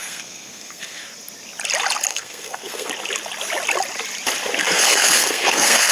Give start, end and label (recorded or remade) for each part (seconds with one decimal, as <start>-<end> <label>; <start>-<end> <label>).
0.0-1.0 remade; 1.0-2.1 recorded; 2.1-2.9 remade; 2.9-4.6 recorded; 4.6-5.9 remade